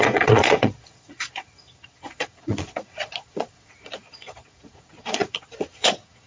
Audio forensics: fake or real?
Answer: fake